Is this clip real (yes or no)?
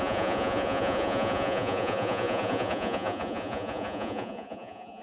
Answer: no